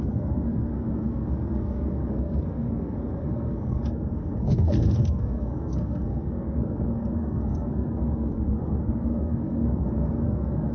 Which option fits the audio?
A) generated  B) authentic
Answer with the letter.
A